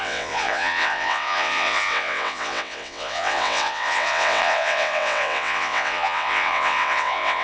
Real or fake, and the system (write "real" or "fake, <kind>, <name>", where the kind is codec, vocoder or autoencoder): fake, vocoder, WaveNeXt